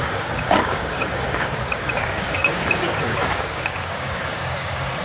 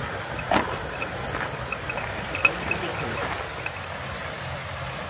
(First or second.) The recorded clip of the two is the second